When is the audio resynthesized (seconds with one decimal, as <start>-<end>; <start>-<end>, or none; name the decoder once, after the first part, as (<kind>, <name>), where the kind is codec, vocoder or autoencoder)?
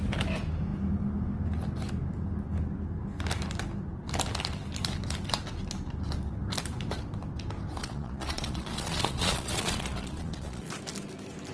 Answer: 7.8-10.7 (vocoder, Vocos)